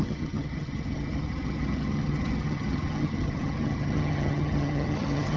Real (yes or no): no